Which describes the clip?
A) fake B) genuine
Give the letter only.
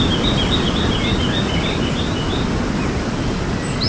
B